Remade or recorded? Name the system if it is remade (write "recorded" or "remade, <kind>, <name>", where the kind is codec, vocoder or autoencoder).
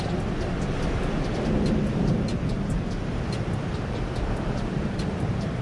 remade, vocoder, BigVGAN v2